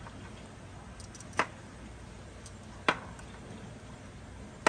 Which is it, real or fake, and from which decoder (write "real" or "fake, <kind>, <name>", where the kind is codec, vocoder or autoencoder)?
real